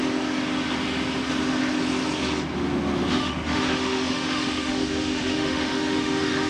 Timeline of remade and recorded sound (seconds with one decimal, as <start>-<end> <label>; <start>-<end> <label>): 0.0-3.1 recorded; 3.1-6.5 remade